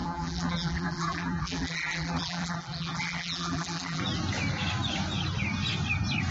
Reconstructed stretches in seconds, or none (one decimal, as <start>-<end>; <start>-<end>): 0.0-4.0